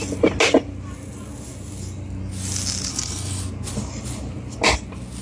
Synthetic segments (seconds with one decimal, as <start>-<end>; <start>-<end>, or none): 2.9-3.4